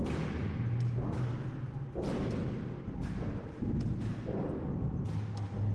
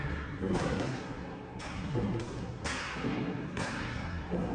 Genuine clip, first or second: first